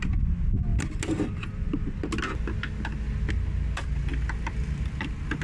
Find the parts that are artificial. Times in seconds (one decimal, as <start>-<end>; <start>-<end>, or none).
none